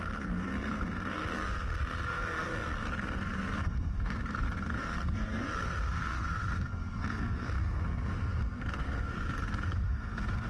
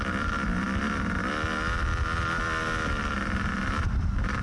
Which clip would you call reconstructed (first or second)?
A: first